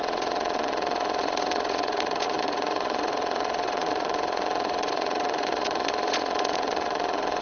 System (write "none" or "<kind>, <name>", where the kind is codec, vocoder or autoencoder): vocoder, Vocos